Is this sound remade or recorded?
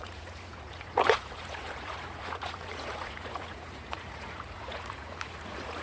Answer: remade